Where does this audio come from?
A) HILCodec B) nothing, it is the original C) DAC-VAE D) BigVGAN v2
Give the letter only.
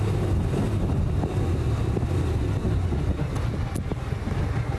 B